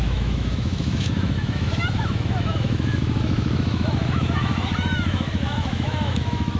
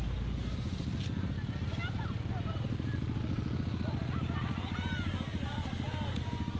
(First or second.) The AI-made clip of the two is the first